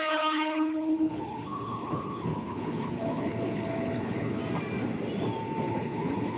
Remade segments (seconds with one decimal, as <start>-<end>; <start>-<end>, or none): 0.0-4.4; 5.7-6.4